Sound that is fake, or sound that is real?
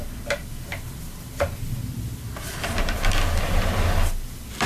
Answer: real